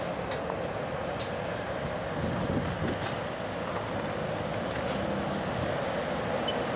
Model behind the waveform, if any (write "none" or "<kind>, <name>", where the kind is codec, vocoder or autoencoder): none